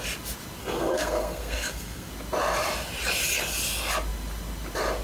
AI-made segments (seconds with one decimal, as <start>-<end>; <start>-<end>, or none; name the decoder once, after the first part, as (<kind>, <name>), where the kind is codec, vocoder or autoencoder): 0.6-2.1 (codec, SNAC)